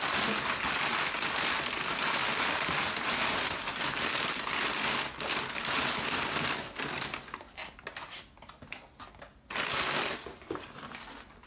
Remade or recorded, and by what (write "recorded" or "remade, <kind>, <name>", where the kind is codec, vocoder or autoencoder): recorded